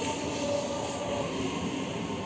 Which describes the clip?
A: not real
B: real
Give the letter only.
B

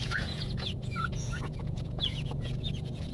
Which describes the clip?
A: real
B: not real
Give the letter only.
B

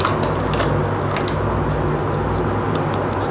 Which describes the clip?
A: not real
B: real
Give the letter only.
B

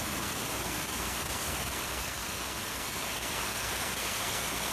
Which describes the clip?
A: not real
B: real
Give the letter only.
A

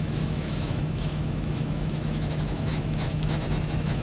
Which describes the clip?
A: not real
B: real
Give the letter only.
A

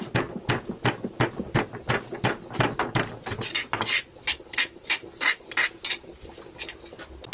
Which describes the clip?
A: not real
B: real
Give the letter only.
B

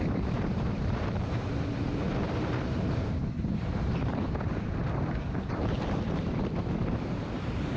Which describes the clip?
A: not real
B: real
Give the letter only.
A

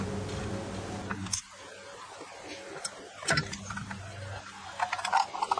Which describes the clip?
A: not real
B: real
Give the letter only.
B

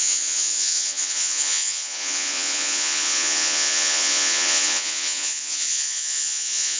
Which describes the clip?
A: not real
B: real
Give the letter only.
A